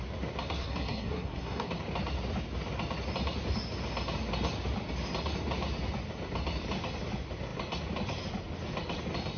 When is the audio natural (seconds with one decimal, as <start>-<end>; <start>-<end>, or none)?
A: 0.0-0.6; 1.7-9.4